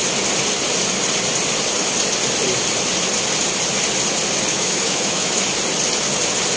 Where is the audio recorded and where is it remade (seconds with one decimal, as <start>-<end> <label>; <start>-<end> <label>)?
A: 0.0-4.5 recorded; 4.5-5.4 remade; 5.4-6.6 recorded